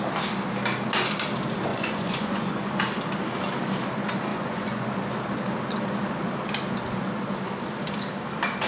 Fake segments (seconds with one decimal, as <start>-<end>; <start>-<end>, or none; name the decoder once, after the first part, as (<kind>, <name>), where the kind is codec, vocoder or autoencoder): 1.7-2.8 (vocoder, Vocos); 4.3-4.9